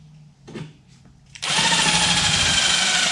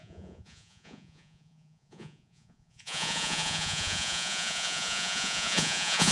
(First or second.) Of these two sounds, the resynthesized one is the second